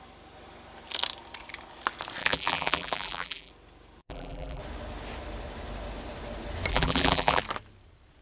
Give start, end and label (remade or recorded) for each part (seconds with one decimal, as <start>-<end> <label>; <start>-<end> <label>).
0.0-2.2 recorded; 2.2-3.5 remade; 3.5-4.0 recorded; 4.0-4.6 remade; 4.6-6.7 recorded; 6.7-7.4 remade; 7.4-8.2 recorded